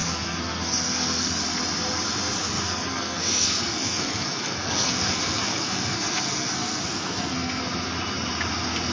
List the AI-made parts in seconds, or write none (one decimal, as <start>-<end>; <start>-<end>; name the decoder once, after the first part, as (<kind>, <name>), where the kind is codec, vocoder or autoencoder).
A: 0.0-1.4 (codec, SNAC); 2.4-7.6